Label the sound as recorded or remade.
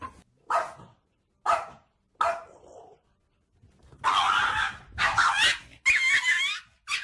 recorded